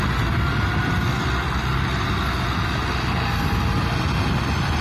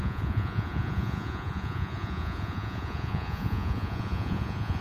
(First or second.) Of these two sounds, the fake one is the second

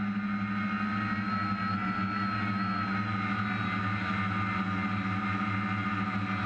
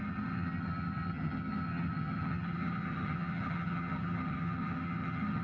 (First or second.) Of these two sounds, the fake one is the second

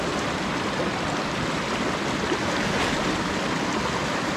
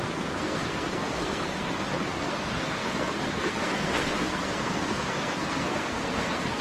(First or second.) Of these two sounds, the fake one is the second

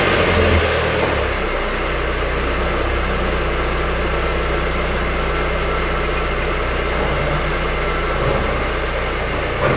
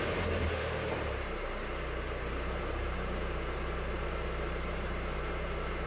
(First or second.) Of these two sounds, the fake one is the second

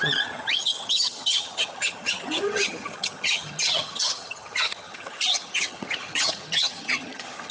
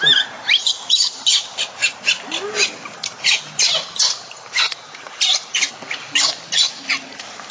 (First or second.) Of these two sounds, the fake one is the first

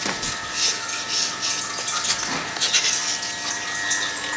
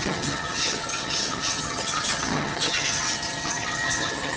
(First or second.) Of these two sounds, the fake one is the second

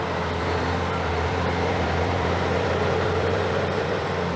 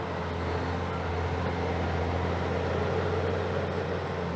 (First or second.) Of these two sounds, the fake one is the first